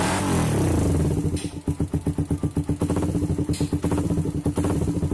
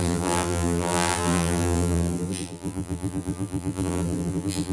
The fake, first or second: second